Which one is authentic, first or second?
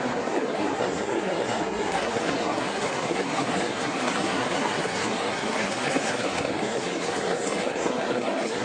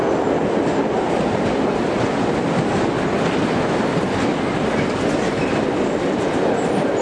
second